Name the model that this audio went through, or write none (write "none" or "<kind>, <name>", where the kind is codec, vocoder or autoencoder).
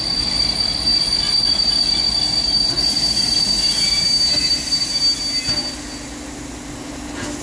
none